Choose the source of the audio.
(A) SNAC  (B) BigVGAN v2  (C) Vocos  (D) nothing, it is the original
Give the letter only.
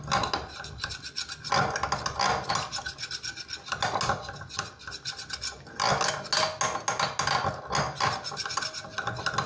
D